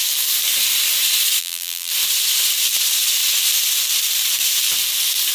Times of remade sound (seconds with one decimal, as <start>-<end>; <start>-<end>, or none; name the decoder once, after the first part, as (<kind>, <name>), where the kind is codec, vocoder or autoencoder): 1.4-1.9 (vocoder, BigVGAN v2)